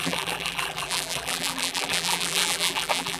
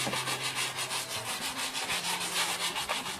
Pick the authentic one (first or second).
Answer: second